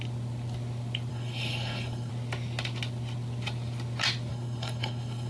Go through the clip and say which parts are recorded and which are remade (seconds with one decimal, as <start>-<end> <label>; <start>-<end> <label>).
0.0-1.1 recorded; 1.1-2.1 remade; 2.1-4.3 recorded; 4.3-5.3 remade